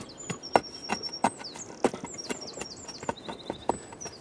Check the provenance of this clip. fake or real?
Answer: real